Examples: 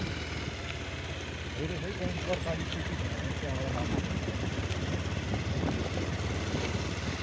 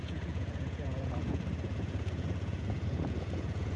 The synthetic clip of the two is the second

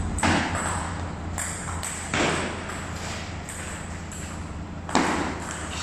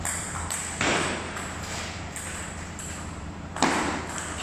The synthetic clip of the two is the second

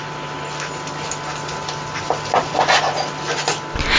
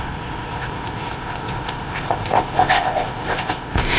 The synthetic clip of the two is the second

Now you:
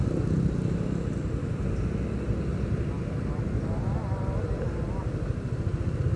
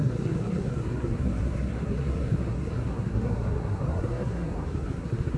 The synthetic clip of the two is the second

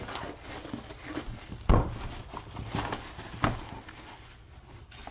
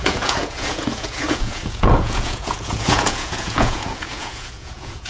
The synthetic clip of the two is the second